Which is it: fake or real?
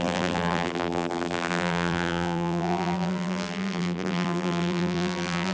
fake